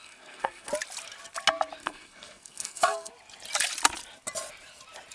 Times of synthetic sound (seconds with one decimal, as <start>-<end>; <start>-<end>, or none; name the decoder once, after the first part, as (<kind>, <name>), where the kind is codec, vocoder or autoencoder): 0.0-0.7 (codec, SNAC); 1.8-3.1